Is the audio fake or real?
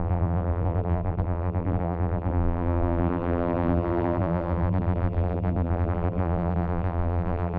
fake